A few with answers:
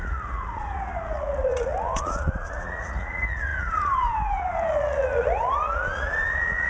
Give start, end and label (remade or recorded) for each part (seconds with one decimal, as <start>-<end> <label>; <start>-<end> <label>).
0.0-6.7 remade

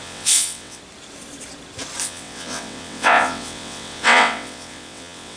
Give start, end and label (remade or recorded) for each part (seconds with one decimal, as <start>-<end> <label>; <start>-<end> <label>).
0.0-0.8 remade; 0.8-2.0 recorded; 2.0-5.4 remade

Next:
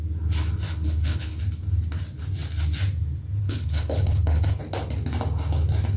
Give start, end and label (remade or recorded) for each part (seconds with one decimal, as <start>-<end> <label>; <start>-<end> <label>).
0.0-0.7 recorded; 0.7-1.4 remade; 1.4-3.4 recorded; 3.4-4.6 remade; 4.6-6.0 recorded

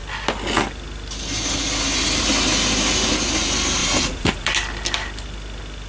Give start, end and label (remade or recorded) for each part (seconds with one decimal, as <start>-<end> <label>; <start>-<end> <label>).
0.0-3.8 recorded; 3.8-4.5 remade; 4.5-5.9 recorded

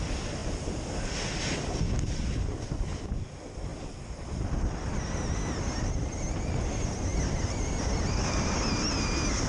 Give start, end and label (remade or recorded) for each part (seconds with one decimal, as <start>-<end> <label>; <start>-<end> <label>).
0.0-3.7 recorded; 3.7-4.9 remade; 4.9-9.5 recorded